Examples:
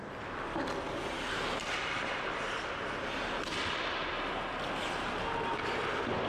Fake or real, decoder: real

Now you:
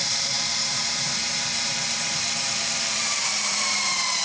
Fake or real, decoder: fake, vocoder, BigVGAN v2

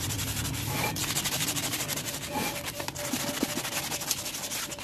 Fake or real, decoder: real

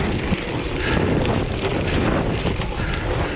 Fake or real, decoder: fake, vocoder, BigVGAN v2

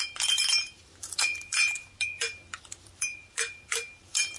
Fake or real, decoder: fake, vocoder, BigVGAN v2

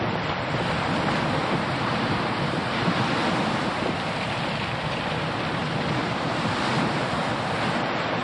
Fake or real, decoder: fake, vocoder, BigVGAN v2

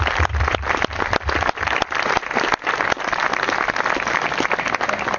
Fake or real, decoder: real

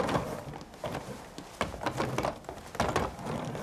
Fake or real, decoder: real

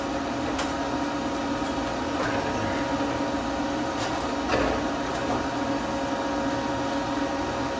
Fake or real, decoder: real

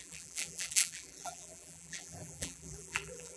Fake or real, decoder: fake, vocoder, BigVGAN v2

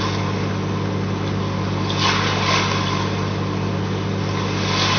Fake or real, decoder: real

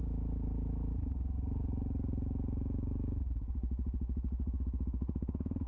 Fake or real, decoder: real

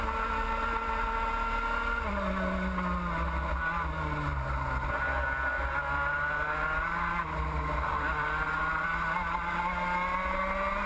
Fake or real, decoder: real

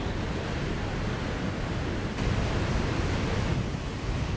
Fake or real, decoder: real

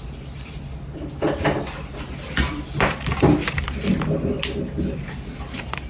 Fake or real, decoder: real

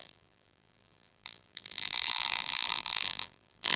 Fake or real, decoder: fake, vocoder, BigVGAN v2